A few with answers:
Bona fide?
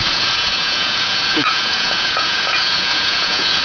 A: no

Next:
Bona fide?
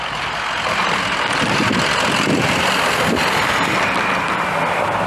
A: no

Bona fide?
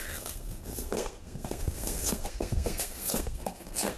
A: no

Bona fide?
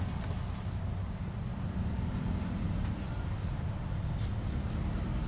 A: yes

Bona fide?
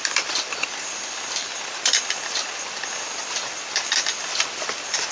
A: no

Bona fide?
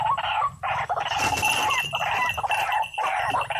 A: yes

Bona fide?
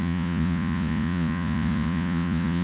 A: no